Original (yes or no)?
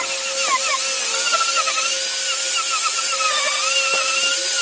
yes